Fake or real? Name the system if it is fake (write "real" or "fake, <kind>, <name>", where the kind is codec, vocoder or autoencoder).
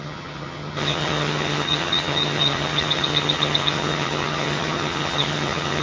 fake, vocoder, HiFi-GAN